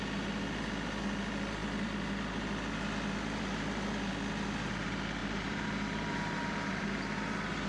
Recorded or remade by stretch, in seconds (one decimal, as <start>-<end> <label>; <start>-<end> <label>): 0.0-5.2 recorded; 5.2-7.7 remade